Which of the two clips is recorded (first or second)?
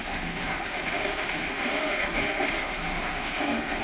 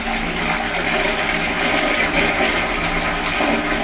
second